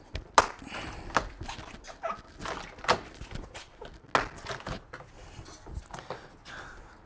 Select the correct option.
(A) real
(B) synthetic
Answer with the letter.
A